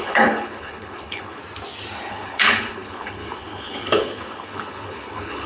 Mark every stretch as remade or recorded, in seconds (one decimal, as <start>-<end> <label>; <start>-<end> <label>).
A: 0.0-1.4 remade; 1.4-2.1 recorded; 2.1-5.5 remade